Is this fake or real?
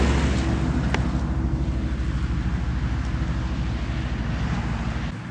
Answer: real